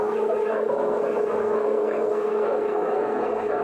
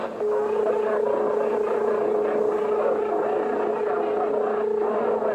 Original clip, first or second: second